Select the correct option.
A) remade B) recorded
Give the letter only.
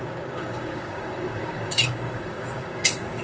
A